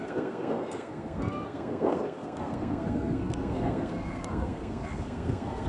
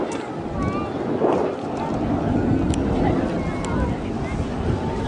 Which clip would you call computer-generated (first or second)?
first